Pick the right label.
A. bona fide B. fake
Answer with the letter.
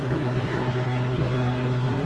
B